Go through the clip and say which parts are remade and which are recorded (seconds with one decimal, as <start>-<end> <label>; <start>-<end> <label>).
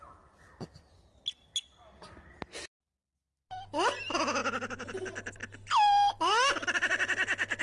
0.0-7.6 recorded